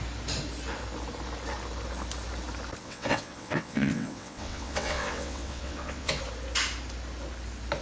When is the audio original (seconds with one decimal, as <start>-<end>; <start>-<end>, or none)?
0.0-2.8; 6.2-7.8